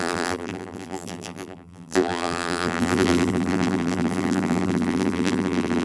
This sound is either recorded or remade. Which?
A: remade